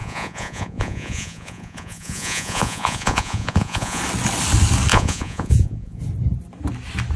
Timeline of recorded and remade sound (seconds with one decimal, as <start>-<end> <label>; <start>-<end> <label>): 0.0-4.0 remade; 4.0-4.9 recorded; 4.9-6.0 remade; 6.0-7.2 recorded